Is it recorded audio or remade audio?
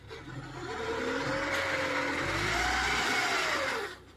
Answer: recorded